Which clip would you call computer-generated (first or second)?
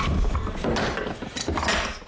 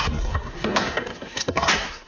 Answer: second